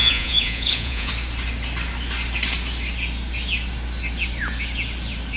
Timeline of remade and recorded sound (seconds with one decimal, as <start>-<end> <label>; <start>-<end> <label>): 0.0-1.1 remade; 1.1-5.4 recorded